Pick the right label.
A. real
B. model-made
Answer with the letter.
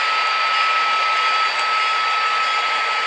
A